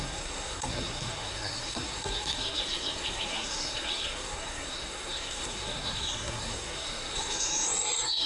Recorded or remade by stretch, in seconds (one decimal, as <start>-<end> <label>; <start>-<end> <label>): 0.0-8.3 remade